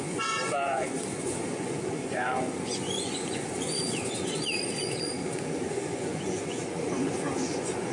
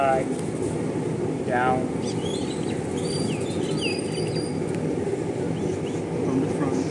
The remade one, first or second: first